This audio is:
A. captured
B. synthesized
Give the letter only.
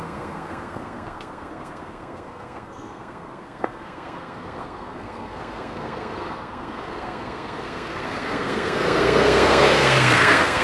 B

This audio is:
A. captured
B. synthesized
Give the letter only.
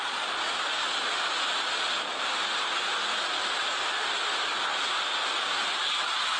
A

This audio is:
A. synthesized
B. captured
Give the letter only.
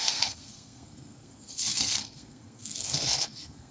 A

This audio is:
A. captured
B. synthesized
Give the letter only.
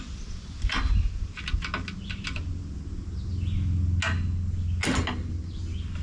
A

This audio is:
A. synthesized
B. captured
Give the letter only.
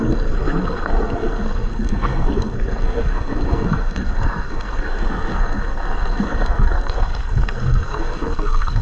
A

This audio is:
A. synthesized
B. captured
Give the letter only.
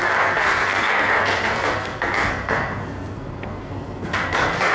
A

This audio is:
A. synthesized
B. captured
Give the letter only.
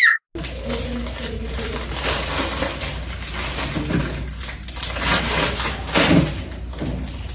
B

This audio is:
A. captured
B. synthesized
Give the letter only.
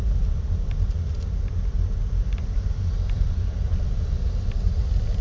A